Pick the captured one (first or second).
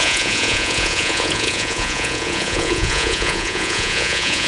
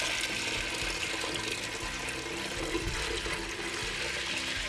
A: second